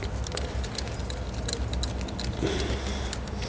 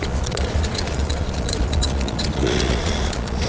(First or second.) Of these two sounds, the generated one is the second